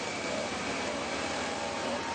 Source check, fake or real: fake